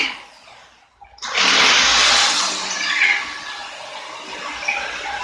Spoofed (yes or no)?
no